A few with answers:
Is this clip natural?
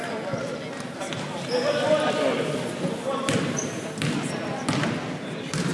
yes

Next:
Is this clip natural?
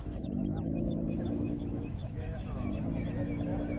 no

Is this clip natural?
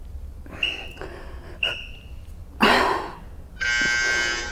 yes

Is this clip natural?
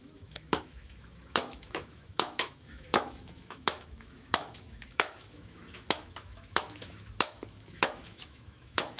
no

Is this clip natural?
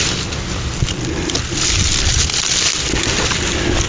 yes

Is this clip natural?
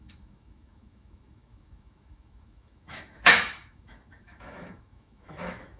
no